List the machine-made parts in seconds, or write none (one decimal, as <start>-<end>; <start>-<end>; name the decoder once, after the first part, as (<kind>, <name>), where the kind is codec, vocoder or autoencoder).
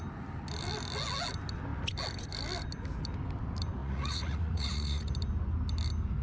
3.8-5.1 (vocoder, Vocos)